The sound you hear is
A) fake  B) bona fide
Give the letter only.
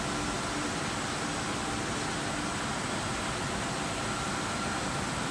B